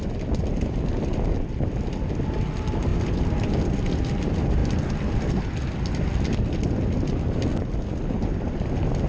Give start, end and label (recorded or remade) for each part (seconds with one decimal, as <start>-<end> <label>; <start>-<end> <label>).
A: 0.0-4.6 recorded; 4.6-5.3 remade; 5.3-9.1 recorded

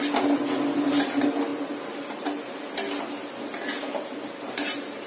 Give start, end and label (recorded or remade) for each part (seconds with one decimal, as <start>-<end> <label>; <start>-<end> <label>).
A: 0.0-5.1 recorded

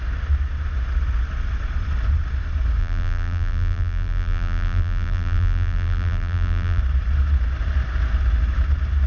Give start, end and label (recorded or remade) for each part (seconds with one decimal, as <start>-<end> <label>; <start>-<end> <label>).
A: 0.0-2.8 recorded; 2.8-6.8 remade; 6.8-9.1 recorded

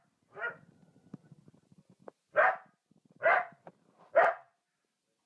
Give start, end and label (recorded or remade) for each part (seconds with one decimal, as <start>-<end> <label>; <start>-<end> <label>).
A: 0.0-5.3 recorded

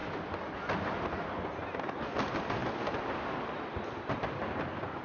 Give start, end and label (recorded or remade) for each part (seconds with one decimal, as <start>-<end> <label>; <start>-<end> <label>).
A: 0.0-1.9 recorded; 1.9-5.0 remade

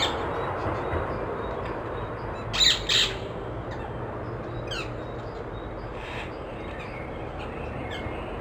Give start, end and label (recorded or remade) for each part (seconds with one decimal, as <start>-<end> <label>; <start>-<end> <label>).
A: 0.0-0.6 recorded; 0.6-2.1 remade; 2.1-5.9 recorded; 5.9-8.4 remade

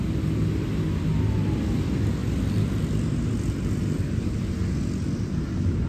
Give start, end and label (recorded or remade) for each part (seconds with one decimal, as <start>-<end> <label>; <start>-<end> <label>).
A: 0.0-5.9 recorded